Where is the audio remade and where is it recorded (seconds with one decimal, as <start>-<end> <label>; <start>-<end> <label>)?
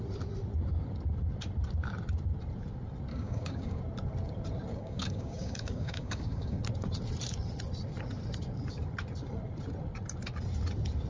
0.0-3.1 recorded; 3.1-3.8 remade; 3.8-4.7 recorded; 4.7-6.6 remade; 6.6-11.1 recorded